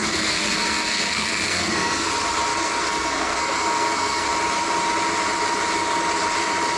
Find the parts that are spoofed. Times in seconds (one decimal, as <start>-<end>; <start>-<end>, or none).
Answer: 0.0-2.1; 2.5-4.3